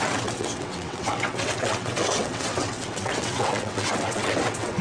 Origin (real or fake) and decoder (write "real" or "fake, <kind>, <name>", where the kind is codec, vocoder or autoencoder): fake, vocoder, WaveNeXt